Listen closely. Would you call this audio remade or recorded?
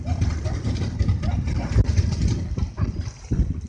remade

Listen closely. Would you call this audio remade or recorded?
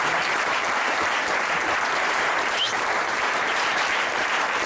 remade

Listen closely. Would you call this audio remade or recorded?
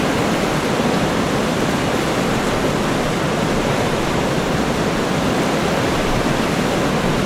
remade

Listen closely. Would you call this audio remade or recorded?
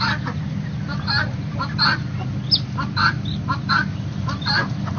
remade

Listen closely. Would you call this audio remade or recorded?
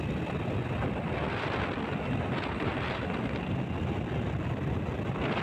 recorded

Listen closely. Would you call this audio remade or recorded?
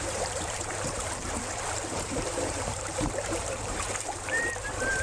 remade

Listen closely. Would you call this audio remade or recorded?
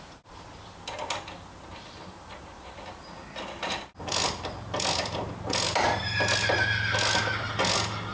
recorded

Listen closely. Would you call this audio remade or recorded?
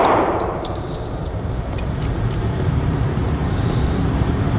remade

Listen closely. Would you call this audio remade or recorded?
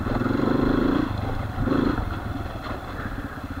remade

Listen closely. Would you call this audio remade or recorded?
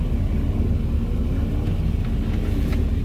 recorded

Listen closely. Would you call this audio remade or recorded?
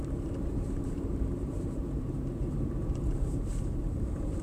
remade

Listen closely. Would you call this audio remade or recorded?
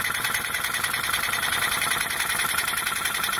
remade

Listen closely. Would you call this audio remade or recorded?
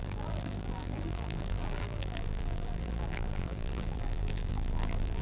remade